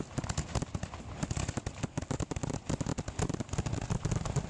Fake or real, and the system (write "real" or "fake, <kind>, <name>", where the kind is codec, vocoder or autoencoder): real